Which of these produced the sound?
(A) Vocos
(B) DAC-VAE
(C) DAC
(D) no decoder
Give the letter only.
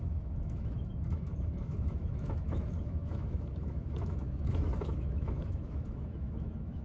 B